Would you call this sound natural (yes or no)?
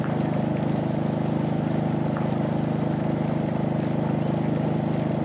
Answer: yes